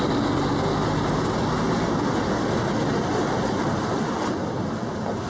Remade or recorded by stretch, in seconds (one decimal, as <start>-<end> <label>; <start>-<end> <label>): 0.0-5.3 recorded